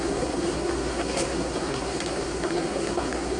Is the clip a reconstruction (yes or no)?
yes